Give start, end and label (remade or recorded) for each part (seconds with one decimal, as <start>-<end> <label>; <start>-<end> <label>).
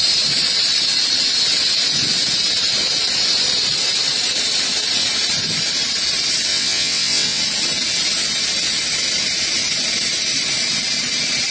0.0-6.5 recorded; 6.5-7.4 remade; 7.4-11.5 recorded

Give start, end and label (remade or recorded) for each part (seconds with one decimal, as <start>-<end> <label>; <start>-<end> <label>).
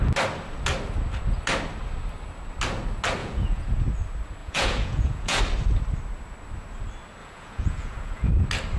0.0-3.2 recorded; 3.2-3.8 remade; 3.8-4.4 recorded; 4.4-5.4 remade; 5.4-7.2 recorded; 7.2-8.4 remade; 8.4-8.8 recorded